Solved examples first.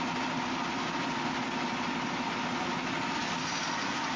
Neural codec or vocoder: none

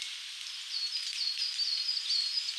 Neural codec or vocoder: none